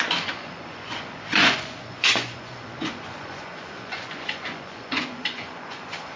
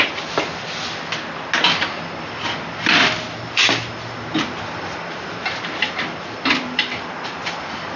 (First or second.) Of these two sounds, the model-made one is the first